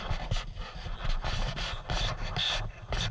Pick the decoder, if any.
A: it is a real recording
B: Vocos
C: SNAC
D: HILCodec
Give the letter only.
A